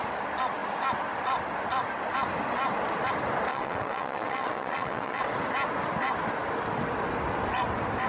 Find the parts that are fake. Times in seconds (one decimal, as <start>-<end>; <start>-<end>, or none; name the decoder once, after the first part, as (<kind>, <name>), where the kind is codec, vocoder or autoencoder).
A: 3.5-5.2 (vocoder, WaveNeXt)